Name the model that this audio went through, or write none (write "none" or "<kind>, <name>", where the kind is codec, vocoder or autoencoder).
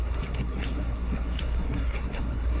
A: codec, SNAC